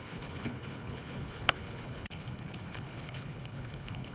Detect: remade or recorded remade